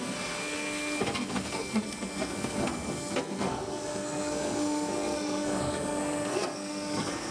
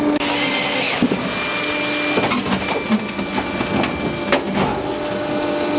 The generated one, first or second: first